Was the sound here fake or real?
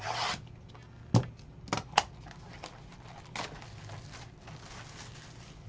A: real